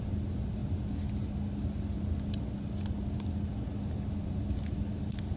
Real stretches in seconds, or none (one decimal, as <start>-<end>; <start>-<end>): 0.0-5.4